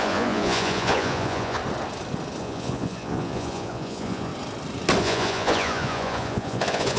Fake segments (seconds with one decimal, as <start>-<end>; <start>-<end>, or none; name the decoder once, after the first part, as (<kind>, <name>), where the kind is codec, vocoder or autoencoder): 0.0-1.6 (vocoder, Vocos); 2.4-4.3; 5.0-7.0